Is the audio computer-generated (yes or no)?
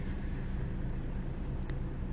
no